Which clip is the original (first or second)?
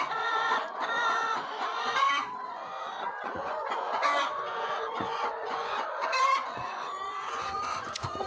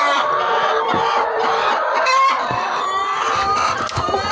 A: second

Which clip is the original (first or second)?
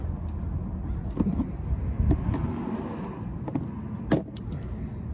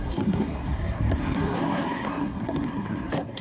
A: first